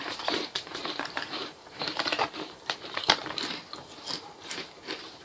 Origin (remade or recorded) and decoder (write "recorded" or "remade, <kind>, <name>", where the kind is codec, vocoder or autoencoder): remade, vocoder, BigVGAN v2